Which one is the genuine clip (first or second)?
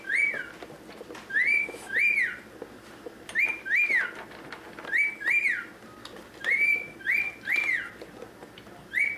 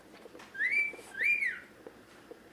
first